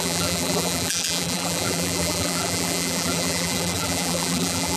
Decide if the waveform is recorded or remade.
remade